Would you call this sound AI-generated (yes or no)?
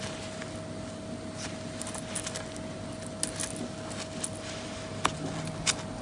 no